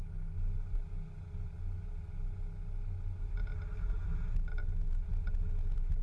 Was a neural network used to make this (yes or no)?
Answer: no